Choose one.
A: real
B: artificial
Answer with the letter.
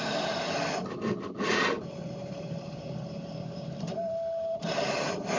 B